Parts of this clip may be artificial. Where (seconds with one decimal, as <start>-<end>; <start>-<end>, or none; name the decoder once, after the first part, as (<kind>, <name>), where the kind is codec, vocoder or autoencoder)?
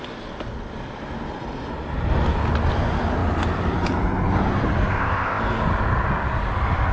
4.9-5.4 (codec, ZipCodec)